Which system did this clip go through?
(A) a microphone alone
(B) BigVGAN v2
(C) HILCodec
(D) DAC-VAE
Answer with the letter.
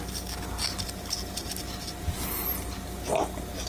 A